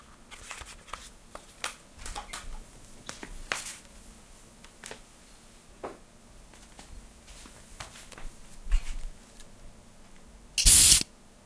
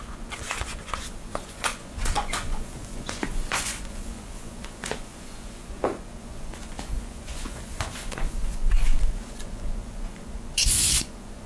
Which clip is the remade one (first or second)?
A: second